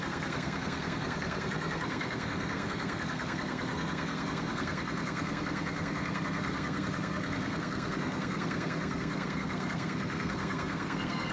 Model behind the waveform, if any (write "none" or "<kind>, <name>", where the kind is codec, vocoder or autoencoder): codec, SNAC